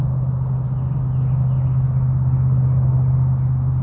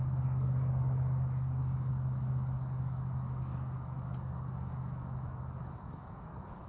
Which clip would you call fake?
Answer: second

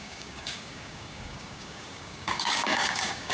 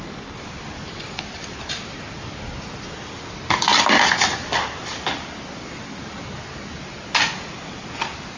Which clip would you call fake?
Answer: first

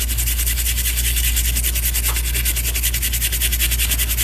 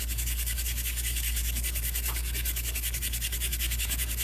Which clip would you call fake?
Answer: second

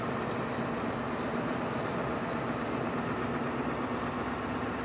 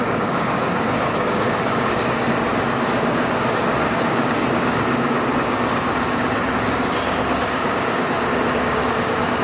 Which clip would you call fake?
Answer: second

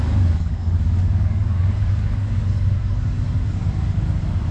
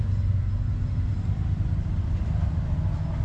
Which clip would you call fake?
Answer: first